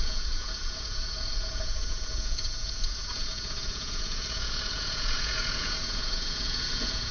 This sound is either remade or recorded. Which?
remade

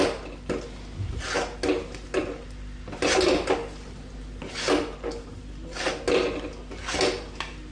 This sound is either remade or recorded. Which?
recorded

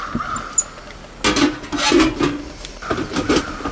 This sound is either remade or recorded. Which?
recorded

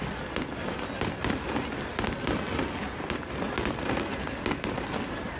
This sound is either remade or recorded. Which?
recorded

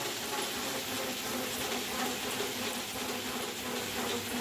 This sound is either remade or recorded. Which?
recorded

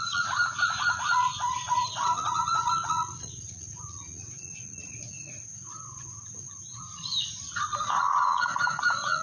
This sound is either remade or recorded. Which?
remade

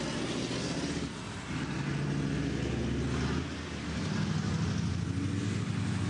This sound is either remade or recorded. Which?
recorded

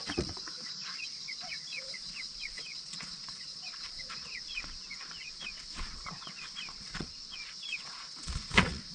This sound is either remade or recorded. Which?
remade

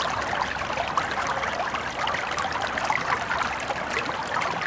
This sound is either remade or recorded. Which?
recorded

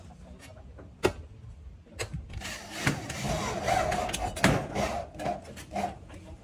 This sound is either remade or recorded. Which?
recorded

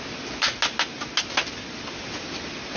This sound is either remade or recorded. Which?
recorded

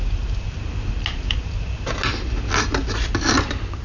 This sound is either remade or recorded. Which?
recorded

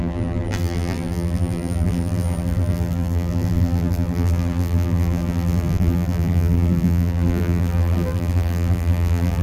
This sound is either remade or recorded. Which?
remade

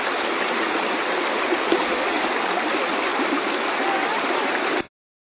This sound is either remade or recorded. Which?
recorded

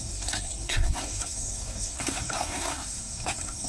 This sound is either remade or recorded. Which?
remade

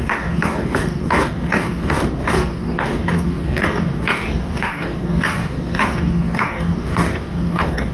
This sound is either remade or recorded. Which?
remade